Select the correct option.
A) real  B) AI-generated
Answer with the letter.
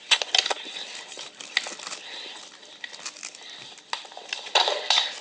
A